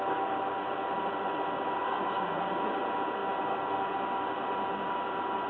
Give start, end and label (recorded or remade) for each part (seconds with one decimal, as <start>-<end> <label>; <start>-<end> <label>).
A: 0.0-5.5 recorded